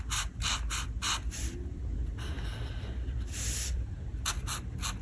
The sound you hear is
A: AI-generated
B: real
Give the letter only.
B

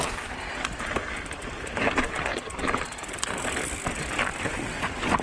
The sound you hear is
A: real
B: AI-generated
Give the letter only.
A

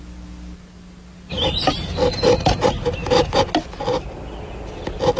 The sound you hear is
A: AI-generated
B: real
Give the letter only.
B